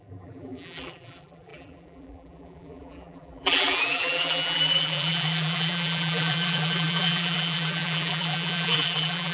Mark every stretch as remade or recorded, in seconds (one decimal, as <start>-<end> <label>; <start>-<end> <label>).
0.0-9.3 remade